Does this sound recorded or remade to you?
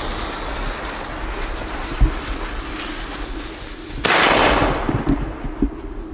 recorded